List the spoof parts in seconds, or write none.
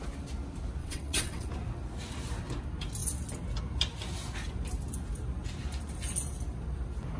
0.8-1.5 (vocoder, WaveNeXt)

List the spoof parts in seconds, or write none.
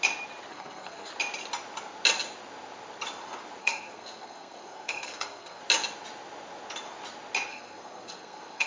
0.5-1.1 (codec, SNAC); 3.6-5.6; 7.5-8.7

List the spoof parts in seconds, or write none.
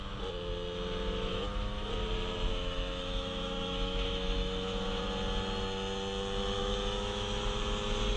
1.3-1.9 (autoencoder, DAC-VAE); 2.5-5.0; 6.6-7.6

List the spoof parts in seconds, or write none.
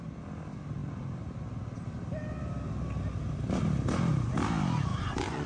4.9-5.5 (vocoder, Vocos)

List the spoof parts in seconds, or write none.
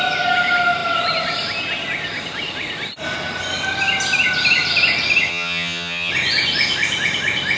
5.3-6.1 (vocoder, HiFi-GAN)